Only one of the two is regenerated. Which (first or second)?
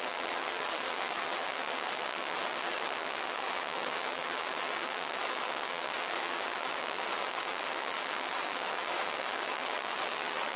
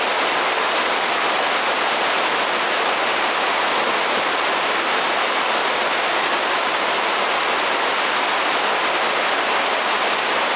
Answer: first